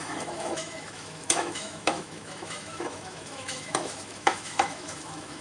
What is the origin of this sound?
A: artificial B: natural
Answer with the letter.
A